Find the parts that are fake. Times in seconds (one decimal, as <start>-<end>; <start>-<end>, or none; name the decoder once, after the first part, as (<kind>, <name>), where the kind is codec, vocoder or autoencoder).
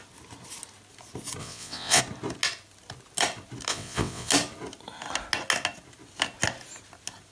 1.4-2.0 (vocoder, WaveNeXt); 3.7-4.3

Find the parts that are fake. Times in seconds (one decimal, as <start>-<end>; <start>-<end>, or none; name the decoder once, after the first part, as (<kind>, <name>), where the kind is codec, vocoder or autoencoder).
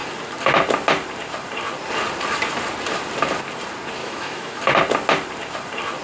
4.0-4.6 (autoencoder, DAC-VAE)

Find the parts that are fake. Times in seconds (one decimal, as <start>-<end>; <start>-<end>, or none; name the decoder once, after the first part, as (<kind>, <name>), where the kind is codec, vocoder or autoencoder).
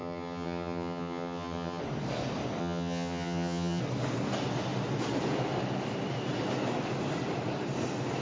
0.0-1.8 (vocoder, HiFi-GAN); 2.6-3.8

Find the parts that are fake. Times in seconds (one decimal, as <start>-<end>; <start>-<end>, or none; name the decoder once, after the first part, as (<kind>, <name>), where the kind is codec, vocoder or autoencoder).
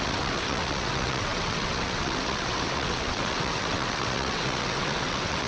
0.0-5.5 (vocoder, WaveNeXt)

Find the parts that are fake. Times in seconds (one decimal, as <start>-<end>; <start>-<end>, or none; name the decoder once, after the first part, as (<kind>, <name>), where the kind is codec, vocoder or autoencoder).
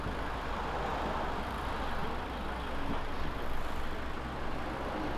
none